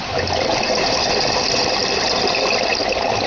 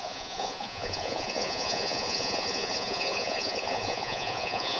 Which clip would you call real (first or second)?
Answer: first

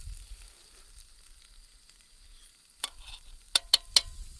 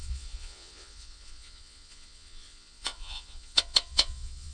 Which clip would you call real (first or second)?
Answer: first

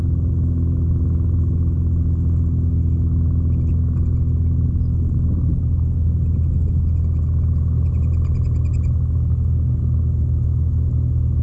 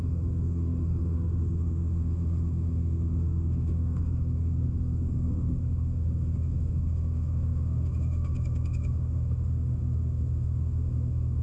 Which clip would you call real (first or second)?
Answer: first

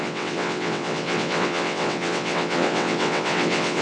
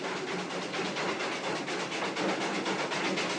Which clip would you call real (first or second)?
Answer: second